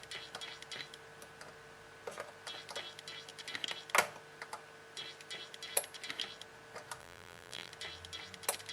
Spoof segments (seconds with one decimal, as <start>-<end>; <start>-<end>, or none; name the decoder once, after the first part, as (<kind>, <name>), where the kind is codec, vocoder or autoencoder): 7.0-7.7 (vocoder, BigVGAN v2)